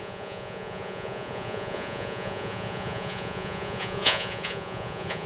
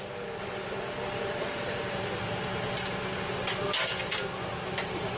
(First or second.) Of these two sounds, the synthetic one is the first